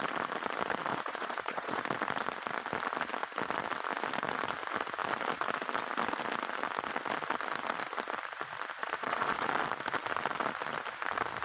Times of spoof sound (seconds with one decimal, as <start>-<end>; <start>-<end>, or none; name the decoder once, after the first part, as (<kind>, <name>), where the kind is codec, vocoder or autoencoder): 0.9-1.8 (vocoder, Vocos); 8.8-9.5

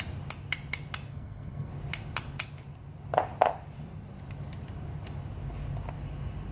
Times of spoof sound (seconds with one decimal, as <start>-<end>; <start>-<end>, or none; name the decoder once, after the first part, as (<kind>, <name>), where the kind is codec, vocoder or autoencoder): 1.1-1.7 (codec, SNAC)